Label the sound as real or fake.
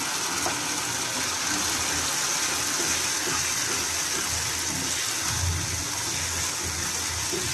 real